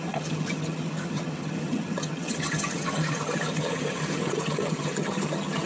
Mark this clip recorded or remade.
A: remade